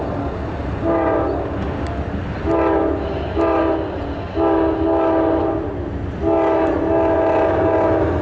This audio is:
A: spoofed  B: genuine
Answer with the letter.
B